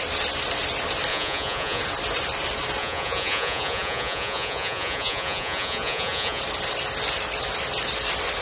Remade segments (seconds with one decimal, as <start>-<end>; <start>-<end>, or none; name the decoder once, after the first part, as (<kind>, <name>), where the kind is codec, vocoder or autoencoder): 1.1-1.8 (vocoder, Vocos); 2.8-6.4